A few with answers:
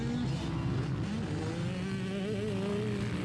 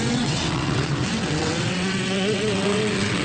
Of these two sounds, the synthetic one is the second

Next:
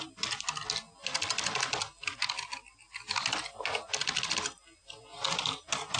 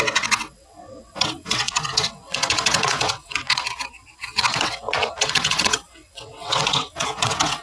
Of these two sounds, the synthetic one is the second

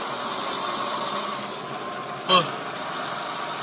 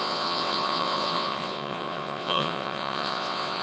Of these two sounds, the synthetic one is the second